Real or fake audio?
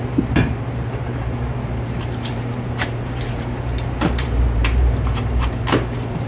fake